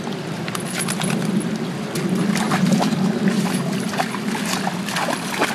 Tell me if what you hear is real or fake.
real